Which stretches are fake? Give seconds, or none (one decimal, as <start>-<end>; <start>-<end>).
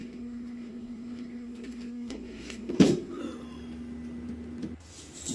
0.0-3.2